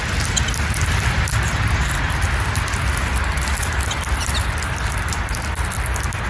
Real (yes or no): yes